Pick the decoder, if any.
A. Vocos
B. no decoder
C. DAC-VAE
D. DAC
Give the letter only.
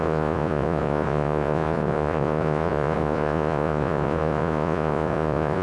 A